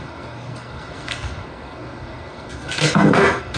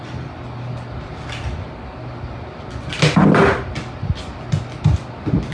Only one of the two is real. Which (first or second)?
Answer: second